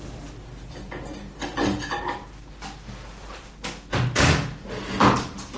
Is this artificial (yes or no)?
no